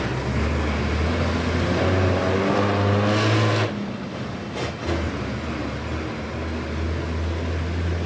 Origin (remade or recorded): recorded